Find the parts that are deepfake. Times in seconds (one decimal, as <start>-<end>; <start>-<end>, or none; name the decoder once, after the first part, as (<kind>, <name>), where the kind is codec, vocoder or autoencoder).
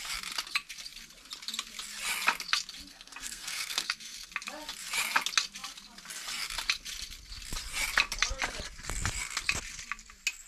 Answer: 2.9-4.3 (codec, SNAC)